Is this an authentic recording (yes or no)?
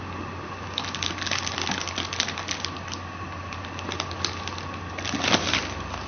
yes